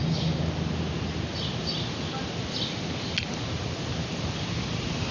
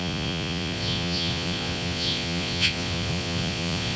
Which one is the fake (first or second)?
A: second